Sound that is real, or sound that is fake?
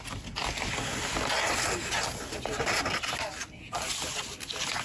real